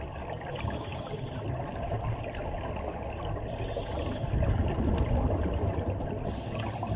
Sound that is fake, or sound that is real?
real